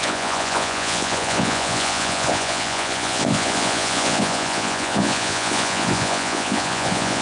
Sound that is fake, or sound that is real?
fake